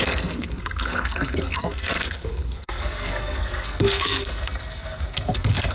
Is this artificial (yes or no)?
yes